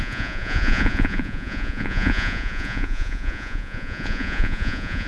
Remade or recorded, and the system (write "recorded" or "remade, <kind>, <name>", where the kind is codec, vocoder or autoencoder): remade, vocoder, Vocos